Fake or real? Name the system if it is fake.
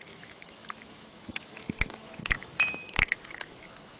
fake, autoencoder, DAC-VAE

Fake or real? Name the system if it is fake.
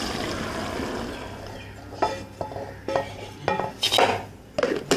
real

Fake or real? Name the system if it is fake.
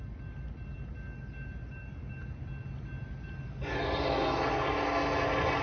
real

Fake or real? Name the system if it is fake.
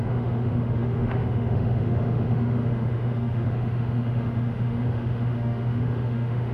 fake, autoencoder, DAC-VAE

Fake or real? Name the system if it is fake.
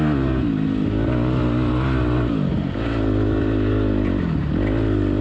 real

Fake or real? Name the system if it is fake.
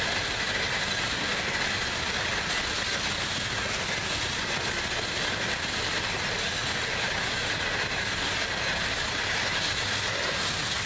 real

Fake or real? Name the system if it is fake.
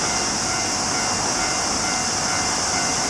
real